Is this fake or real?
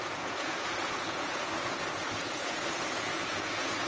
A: fake